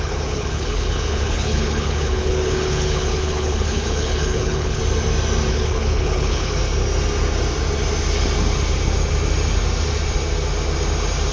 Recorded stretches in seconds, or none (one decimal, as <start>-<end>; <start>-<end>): 4.8-5.5; 6.6-11.3